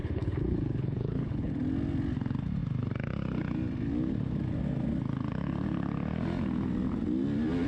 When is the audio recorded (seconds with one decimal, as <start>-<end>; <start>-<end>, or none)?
1.5-7.7

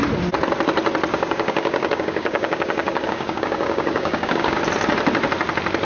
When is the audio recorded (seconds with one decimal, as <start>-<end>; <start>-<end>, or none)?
0.0-1.1; 4.6-5.8